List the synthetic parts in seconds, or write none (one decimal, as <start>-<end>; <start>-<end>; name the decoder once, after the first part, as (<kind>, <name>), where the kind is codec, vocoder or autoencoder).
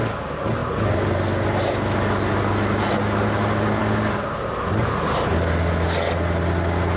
none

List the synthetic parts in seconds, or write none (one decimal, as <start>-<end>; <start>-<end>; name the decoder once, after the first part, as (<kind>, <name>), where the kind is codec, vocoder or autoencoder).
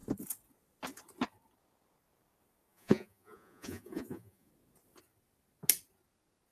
2.7-4.5 (vocoder, Vocos)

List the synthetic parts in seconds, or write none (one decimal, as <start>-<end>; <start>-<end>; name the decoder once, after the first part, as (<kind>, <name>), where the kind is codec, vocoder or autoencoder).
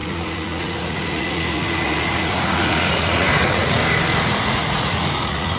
0.0-3.8 (vocoder, Vocos); 4.4-5.6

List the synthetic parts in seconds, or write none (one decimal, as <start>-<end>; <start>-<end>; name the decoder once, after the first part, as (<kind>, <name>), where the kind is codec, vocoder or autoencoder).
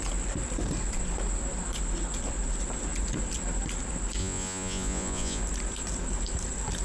4.2-5.4 (vocoder, Vocos)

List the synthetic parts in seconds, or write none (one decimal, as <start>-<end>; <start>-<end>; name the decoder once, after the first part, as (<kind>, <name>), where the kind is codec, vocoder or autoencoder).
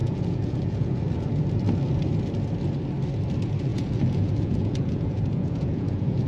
0.0-1.0 (vocoder, Vocos); 3.7-6.3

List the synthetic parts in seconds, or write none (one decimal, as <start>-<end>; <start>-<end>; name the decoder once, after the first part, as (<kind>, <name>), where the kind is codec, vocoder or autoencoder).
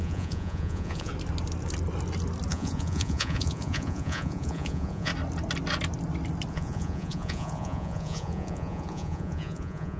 0.0-1.1 (vocoder, Vocos); 2.5-5.1; 6.5-10.0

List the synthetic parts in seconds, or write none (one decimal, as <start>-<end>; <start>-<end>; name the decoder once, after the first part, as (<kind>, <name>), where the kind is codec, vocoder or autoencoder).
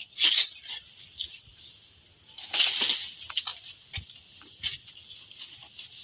none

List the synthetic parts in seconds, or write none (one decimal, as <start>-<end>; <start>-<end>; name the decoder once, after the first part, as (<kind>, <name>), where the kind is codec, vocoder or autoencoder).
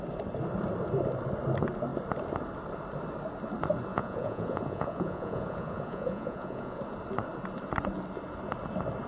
3.9-6.8 (vocoder, Vocos)